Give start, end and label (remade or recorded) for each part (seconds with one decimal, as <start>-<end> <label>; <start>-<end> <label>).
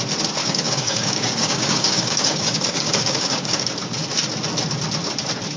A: 0.0-0.4 recorded; 0.4-3.7 remade; 3.7-5.6 recorded